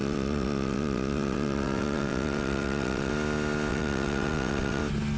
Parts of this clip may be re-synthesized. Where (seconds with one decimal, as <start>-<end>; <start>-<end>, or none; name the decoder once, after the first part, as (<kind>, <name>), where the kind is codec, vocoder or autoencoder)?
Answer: 0.0-3.1 (vocoder, WaveNeXt); 3.7-4.8